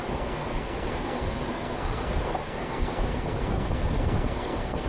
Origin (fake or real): fake